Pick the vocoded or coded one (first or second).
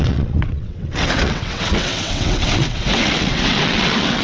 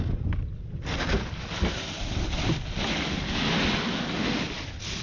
first